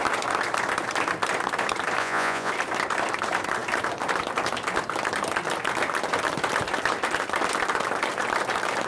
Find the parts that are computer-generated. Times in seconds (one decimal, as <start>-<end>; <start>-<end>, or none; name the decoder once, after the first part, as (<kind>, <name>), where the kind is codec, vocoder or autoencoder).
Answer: 2.0-2.5 (vocoder, Vocos)